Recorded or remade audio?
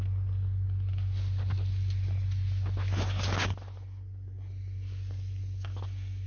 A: recorded